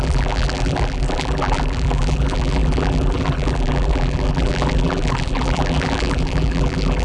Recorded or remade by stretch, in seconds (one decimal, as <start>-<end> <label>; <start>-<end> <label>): 0.0-7.0 remade